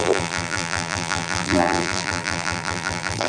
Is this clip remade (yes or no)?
yes